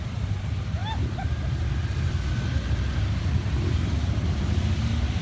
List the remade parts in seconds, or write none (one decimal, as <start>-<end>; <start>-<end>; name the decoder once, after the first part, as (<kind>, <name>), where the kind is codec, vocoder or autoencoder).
none